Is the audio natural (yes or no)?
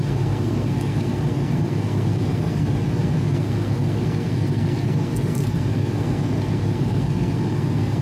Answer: no